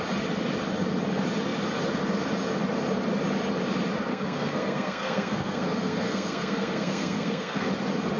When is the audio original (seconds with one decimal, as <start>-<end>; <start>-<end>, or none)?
0.0-4.1; 7.7-8.2

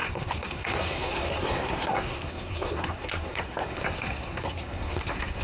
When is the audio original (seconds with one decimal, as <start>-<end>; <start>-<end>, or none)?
none

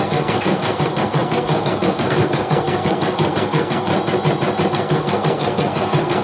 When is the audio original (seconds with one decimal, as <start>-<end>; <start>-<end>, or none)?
3.9-4.7

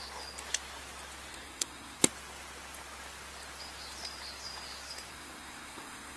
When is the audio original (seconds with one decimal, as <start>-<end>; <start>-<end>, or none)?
0.0-1.3; 2.0-5.1

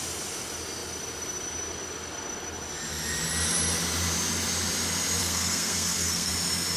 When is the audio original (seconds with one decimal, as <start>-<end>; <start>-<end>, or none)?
0.0-5.2; 6.3-6.8

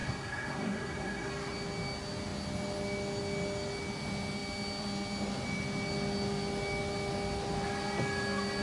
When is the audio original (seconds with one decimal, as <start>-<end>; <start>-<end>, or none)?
1.3-8.6